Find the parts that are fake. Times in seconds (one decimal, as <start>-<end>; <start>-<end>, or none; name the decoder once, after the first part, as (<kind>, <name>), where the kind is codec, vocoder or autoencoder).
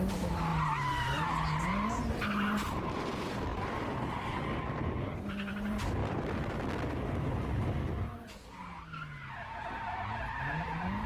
none